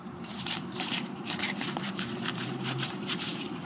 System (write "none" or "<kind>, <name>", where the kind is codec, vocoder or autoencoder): vocoder, BigVGAN v2